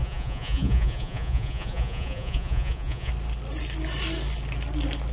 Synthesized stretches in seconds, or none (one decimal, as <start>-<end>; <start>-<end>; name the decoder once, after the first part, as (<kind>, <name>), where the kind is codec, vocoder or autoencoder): 0.0-3.1 (vocoder, Vocos)